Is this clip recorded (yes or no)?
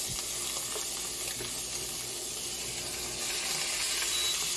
yes